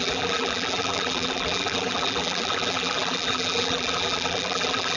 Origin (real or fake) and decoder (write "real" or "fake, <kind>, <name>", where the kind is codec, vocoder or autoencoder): fake, vocoder, BigVGAN v2